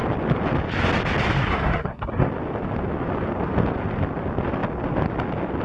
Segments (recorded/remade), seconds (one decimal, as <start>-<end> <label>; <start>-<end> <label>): 0.0-1.4 recorded; 1.4-2.3 remade; 2.3-5.6 recorded